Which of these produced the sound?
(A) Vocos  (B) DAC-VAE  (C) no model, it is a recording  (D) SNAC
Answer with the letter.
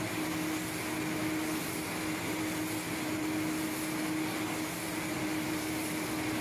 C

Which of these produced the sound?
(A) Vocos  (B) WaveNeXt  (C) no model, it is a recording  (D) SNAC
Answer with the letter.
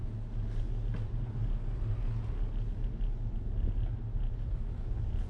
C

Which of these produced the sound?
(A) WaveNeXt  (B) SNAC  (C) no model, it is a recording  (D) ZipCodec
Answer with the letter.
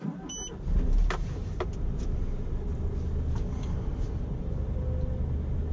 C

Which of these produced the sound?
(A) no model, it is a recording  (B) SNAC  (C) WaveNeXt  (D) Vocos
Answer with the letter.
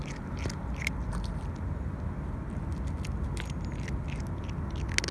A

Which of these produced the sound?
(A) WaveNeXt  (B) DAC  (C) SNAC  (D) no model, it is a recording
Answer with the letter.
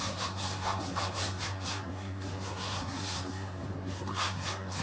C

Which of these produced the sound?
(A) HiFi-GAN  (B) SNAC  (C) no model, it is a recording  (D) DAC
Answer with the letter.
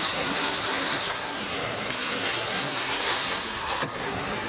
B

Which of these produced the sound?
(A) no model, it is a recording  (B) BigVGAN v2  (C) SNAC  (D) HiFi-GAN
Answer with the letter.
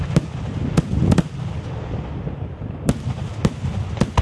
A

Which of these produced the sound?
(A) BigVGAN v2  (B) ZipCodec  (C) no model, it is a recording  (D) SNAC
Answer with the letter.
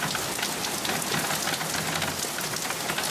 C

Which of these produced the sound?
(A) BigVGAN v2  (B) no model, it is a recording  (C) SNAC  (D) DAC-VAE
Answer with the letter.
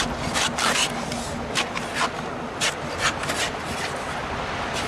B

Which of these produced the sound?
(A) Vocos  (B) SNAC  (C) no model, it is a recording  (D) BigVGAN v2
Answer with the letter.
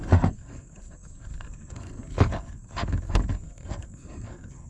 B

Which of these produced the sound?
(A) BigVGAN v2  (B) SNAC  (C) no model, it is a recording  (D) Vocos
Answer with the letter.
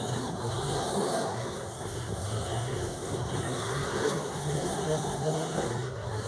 B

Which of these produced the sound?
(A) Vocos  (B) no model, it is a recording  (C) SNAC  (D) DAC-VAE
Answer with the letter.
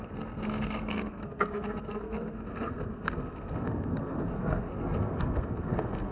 C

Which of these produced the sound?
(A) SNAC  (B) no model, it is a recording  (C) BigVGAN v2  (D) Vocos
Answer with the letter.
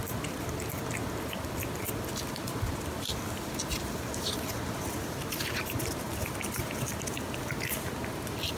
B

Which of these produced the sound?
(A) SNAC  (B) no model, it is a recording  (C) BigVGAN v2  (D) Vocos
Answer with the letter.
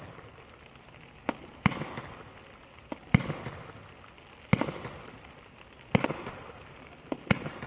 B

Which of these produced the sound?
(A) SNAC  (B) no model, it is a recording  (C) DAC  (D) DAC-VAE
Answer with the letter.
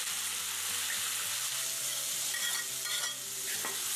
B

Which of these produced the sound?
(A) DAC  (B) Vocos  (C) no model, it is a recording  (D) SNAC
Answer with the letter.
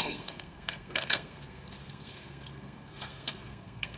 D